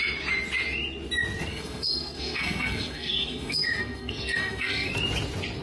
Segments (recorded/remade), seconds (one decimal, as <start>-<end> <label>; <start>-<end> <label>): 0.0-1.5 recorded; 1.5-4.9 remade; 4.9-5.6 recorded